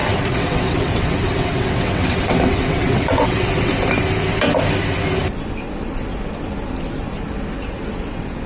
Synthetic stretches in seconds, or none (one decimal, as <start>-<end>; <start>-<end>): 0.0-3.7; 7.9-8.5